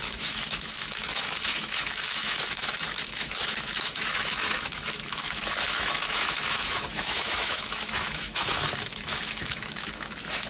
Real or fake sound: fake